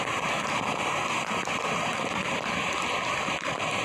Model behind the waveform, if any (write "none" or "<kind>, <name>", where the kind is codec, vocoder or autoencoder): none